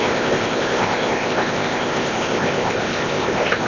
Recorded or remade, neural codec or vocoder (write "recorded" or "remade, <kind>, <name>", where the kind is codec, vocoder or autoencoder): remade, codec, ZipCodec